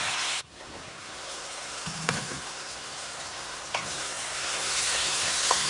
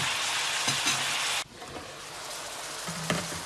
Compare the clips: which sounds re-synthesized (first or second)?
first